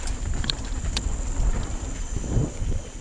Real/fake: fake